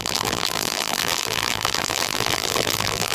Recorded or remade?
remade